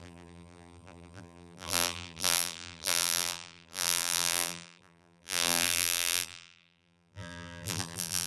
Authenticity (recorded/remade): remade